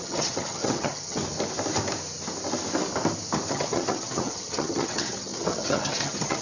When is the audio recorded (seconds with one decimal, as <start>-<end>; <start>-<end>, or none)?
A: 1.2-3.5